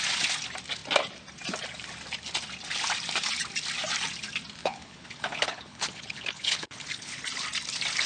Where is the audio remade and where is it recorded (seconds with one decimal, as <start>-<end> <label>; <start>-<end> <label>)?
0.0-4.6 recorded; 4.6-7.2 remade; 7.2-8.1 recorded